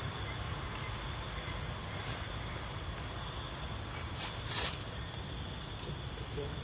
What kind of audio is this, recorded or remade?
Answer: recorded